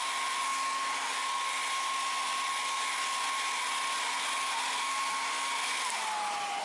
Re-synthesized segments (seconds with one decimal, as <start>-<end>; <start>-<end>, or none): none